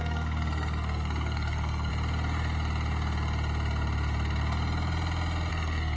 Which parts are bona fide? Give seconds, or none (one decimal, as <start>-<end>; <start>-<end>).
1.9-5.5